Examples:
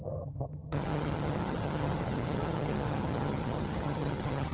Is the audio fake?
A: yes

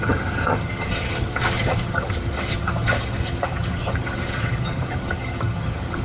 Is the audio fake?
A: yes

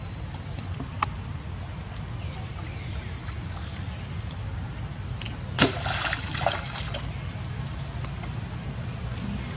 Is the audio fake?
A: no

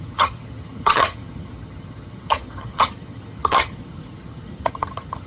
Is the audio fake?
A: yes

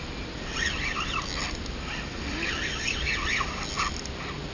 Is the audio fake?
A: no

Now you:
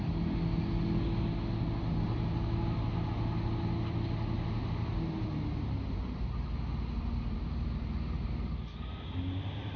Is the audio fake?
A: no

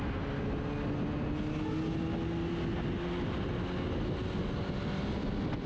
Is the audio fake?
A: no